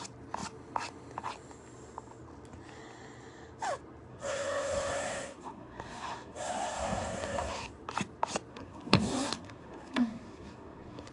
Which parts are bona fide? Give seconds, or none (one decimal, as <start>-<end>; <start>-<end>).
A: 0.0-4.1; 7.7-8.5